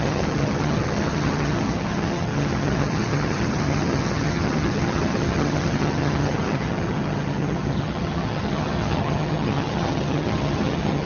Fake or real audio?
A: fake